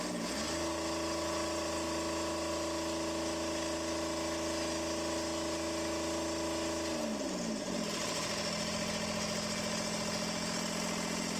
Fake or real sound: real